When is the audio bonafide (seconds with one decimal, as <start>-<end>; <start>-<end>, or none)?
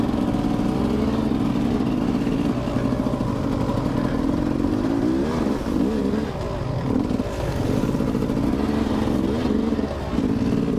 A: 0.0-10.8